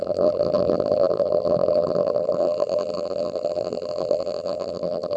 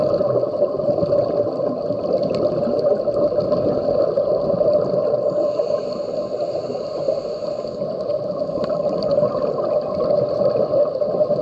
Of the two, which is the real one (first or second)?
second